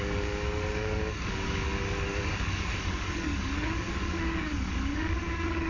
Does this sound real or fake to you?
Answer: fake